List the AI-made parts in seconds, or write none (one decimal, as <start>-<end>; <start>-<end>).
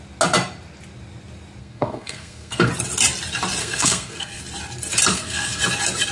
1.6-2.7; 3.6-4.4; 5.1-5.6